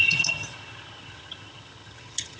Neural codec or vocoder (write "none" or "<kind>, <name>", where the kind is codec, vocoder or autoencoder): vocoder, HiFi-GAN